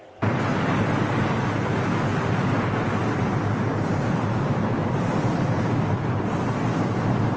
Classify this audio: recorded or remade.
recorded